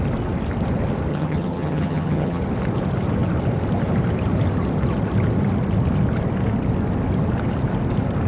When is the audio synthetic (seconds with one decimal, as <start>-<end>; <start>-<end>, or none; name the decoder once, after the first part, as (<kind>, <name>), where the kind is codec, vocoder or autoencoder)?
1.1-2.4 (vocoder, HiFi-GAN)

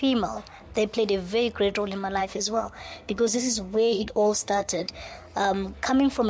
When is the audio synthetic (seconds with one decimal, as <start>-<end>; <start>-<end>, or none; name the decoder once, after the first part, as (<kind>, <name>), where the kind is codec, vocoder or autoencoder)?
2.2-4.9 (codec, SNAC)

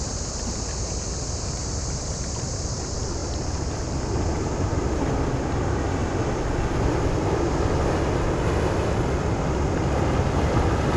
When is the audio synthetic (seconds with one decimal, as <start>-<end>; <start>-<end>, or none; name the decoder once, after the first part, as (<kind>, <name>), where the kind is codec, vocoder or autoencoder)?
3.2-5.1 (vocoder, BigVGAN v2)

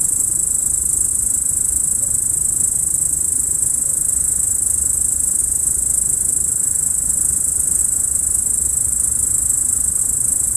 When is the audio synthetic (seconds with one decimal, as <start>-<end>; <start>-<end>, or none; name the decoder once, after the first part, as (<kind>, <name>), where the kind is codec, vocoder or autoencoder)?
none

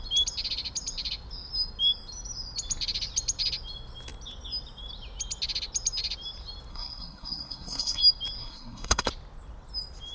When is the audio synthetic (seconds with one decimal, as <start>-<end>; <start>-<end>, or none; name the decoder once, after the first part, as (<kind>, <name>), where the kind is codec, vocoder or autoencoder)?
6.7-8.0 (codec, SNAC); 8.4-9.1

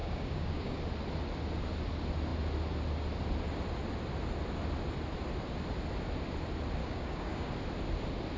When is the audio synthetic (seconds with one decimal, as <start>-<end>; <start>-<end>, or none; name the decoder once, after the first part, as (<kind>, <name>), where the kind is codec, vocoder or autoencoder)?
0.0-0.8 (codec, DAC); 6.8-7.5

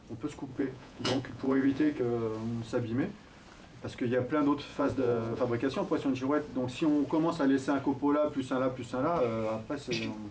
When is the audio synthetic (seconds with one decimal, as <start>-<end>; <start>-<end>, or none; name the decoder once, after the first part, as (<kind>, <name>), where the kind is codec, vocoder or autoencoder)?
0.5-2.0 (vocoder, Vocos); 4.7-5.4